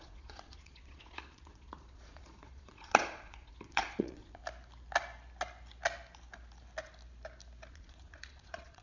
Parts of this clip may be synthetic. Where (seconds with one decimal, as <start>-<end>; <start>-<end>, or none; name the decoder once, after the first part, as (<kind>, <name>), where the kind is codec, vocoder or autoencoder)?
0.0-4.4 (vocoder, Vocos); 7.7-8.8